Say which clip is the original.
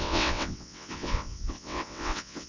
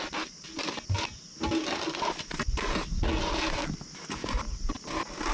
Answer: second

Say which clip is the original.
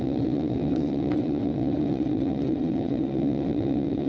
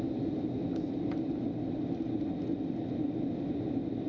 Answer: second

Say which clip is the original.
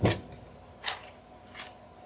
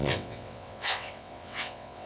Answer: first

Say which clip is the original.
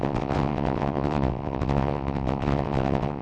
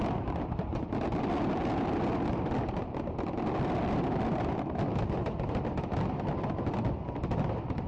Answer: second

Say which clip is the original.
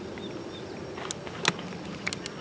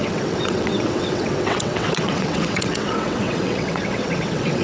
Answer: first